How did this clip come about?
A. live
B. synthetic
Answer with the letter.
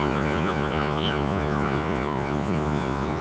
B